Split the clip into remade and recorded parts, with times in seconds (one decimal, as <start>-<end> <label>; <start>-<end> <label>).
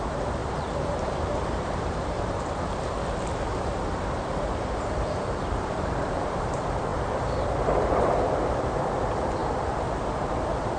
0.0-10.8 remade